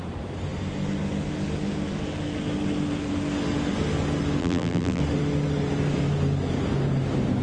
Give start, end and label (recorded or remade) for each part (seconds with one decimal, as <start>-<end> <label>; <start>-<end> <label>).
0.0-4.4 recorded; 4.4-5.0 remade; 5.0-7.4 recorded